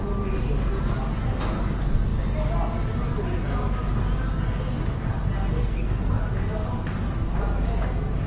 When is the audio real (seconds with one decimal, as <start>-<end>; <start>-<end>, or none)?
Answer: 0.0-5.6; 6.2-8.3